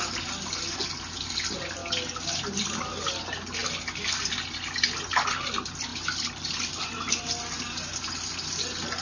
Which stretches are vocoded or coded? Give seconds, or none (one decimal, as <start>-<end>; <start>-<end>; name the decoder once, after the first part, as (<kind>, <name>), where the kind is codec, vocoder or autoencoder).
1.8-2.6 (vocoder, BigVGAN v2); 5.9-6.7